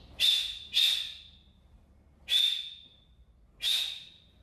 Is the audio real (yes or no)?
yes